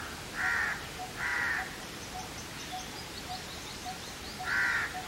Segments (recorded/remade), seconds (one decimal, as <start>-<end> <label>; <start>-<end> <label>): 0.0-1.3 recorded; 1.3-4.4 remade; 4.4-5.1 recorded